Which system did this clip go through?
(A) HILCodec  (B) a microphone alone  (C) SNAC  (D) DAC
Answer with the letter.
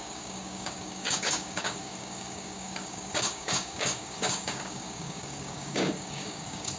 D